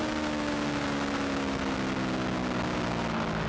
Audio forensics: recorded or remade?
recorded